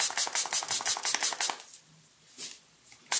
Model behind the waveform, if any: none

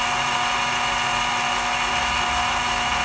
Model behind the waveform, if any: none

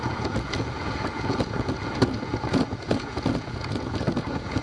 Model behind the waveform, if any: vocoder, Vocos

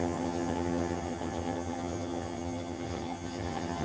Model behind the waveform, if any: vocoder, HiFi-GAN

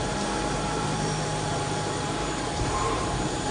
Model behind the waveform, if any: vocoder, BigVGAN v2